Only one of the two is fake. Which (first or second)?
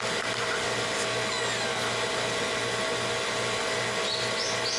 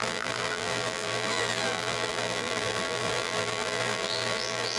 second